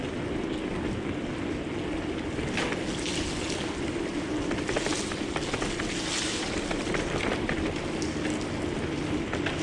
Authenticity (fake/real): real